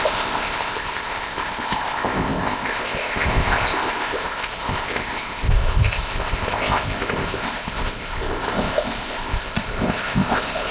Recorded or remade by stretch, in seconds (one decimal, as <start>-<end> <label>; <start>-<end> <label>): 0.0-10.7 remade